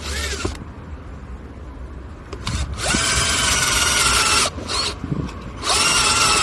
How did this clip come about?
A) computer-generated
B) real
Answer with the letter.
B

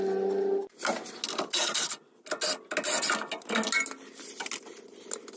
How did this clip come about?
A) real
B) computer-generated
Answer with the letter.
A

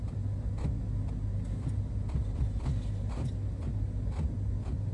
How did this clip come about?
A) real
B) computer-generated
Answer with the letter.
A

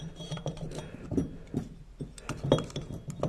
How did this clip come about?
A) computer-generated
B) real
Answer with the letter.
B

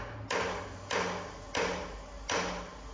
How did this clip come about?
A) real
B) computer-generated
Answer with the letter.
A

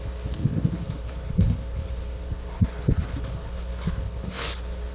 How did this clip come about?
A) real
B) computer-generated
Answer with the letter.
B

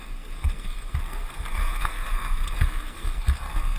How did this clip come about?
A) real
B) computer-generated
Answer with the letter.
B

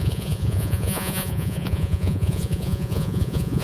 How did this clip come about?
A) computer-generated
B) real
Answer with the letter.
A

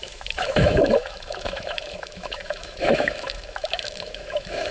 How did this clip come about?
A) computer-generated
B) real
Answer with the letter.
A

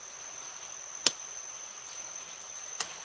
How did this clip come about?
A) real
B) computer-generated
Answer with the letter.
A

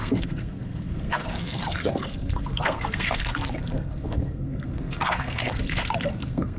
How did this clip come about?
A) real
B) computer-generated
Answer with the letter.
B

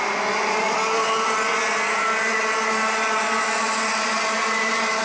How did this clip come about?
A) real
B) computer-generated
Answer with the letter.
A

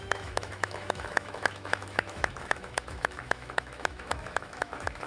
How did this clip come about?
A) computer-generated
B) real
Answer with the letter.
A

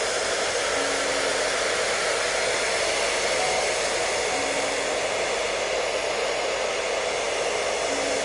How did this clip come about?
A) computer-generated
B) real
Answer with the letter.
B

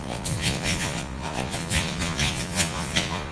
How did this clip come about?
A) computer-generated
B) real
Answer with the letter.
A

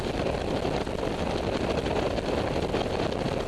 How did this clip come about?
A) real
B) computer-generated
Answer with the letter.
A